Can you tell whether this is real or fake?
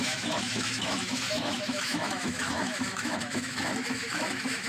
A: fake